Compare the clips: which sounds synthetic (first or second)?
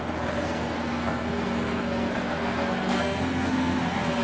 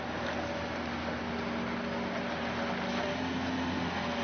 first